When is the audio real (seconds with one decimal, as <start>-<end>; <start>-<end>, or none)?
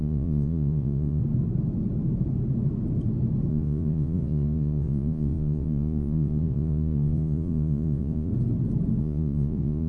1.2-3.5; 8.3-9.0